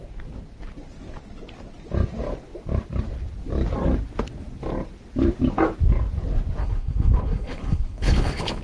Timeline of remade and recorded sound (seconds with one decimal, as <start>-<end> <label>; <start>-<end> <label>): 0.0-6.6 recorded; 6.6-8.6 remade